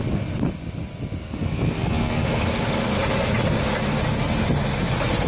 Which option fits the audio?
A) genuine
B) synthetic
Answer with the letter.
A